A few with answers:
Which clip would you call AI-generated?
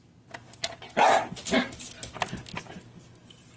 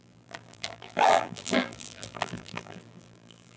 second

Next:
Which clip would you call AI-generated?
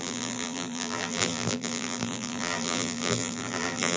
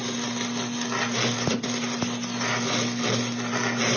first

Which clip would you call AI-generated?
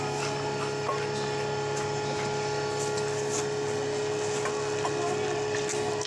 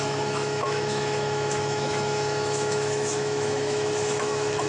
second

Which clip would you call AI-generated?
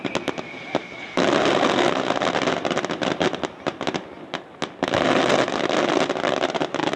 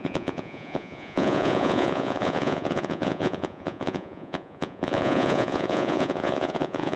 second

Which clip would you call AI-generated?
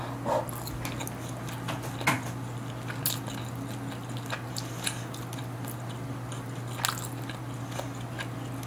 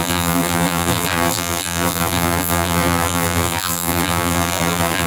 second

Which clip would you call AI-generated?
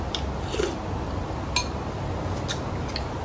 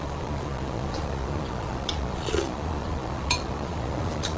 second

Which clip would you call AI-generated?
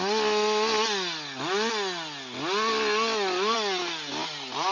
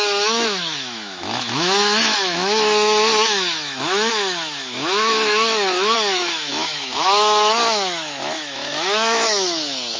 second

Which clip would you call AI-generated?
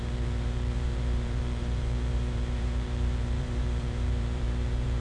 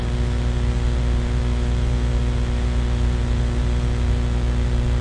first